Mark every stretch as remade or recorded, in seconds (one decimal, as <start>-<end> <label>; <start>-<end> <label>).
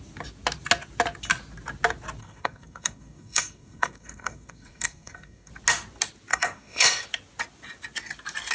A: 0.0-2.2 recorded; 2.2-5.5 remade; 5.5-6.3 recorded; 6.3-7.0 remade; 7.0-8.5 recorded